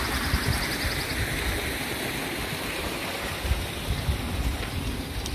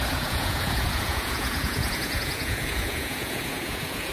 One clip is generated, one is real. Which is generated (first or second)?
second